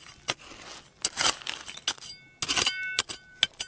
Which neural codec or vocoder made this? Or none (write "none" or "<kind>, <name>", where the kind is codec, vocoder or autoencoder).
none